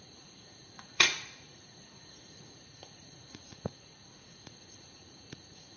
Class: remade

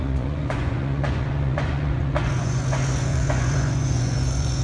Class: remade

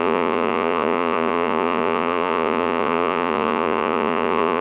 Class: remade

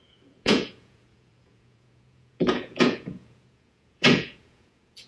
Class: remade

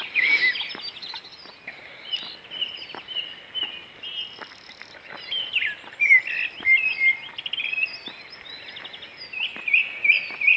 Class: recorded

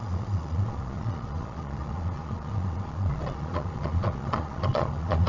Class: remade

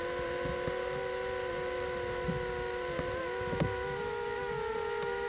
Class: recorded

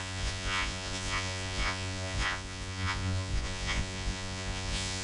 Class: remade